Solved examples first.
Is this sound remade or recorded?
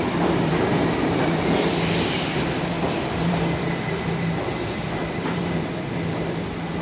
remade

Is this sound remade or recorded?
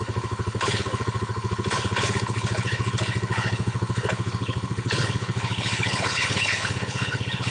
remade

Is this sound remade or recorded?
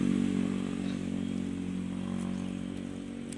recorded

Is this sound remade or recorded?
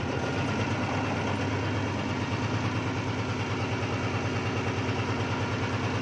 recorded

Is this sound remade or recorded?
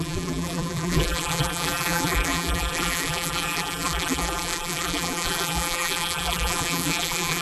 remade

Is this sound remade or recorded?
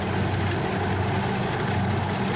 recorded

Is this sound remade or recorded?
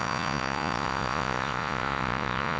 remade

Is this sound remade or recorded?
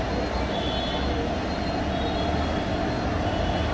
recorded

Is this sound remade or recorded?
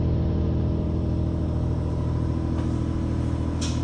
recorded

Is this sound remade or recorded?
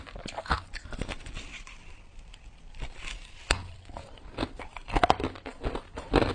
recorded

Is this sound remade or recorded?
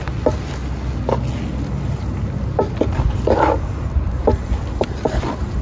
recorded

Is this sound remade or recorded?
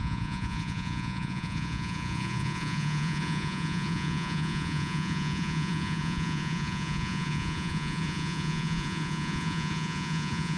remade